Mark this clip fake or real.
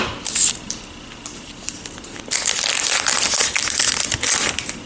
real